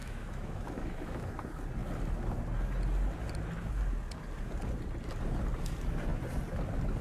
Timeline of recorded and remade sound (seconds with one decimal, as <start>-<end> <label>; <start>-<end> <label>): 0.0-1.3 remade; 1.3-7.0 recorded